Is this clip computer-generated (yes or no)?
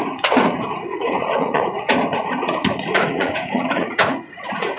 yes